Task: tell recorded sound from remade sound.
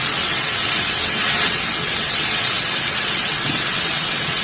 remade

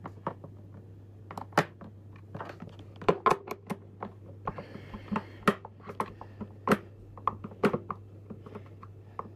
recorded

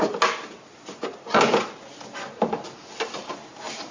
recorded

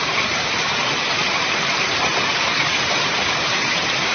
remade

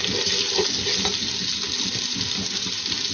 recorded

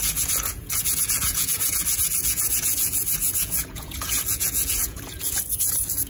remade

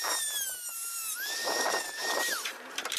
remade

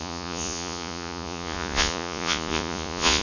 remade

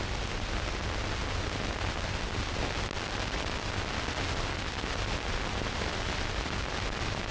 recorded